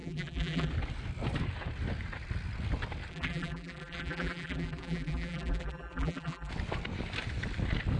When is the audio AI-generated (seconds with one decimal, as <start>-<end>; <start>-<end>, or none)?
0.0-0.7; 3.1-6.5